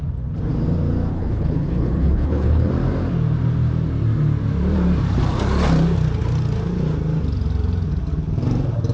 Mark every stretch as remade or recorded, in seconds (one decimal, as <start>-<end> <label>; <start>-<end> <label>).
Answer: 0.0-1.1 recorded; 1.1-2.7 remade; 2.7-8.9 recorded